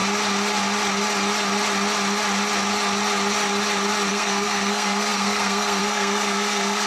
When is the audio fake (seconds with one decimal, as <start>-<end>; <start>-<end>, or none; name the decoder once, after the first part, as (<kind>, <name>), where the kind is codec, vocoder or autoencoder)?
4.1-6.9 (codec, SNAC)